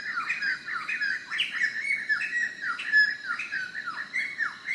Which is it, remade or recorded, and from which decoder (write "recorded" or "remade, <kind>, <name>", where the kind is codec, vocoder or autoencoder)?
recorded